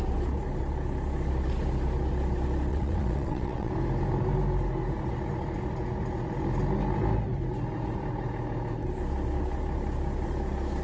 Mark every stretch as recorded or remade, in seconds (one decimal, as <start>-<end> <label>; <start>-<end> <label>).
0.0-2.7 recorded; 2.7-3.7 remade; 3.7-10.8 recorded